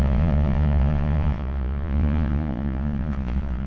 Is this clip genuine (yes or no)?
no